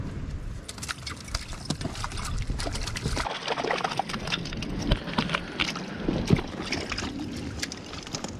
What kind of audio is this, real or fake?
real